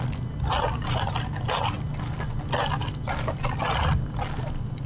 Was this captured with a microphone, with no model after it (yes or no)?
yes